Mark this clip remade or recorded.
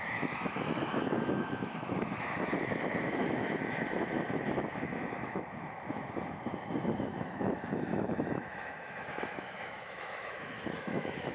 remade